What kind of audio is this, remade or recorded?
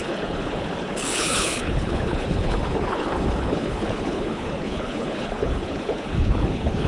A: remade